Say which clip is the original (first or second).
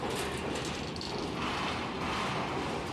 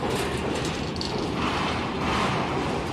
first